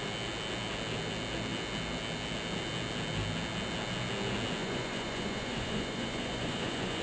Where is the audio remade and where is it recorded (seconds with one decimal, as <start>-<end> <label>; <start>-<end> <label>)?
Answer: 0.0-4.6 recorded; 4.6-7.0 remade